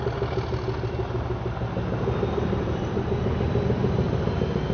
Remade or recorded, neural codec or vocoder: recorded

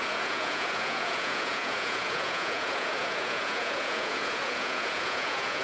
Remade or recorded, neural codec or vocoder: remade, vocoder, Vocos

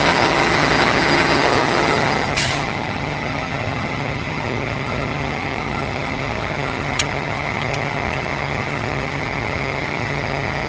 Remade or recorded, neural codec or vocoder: remade, vocoder, HiFi-GAN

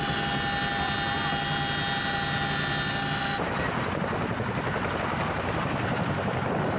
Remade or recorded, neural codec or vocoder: recorded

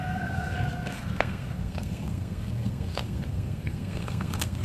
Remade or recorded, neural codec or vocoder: remade, codec, SNAC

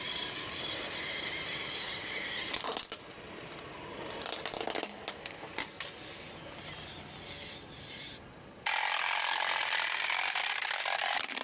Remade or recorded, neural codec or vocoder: recorded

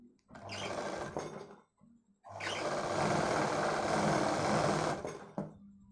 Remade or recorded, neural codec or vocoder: recorded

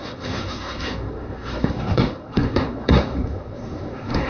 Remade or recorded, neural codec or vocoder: remade, codec, SNAC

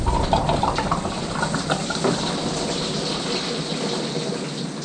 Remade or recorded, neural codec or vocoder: recorded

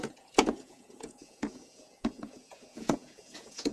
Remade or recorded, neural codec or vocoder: remade, vocoder, Vocos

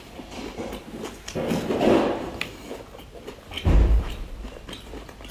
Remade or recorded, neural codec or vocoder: remade, vocoder, BigVGAN v2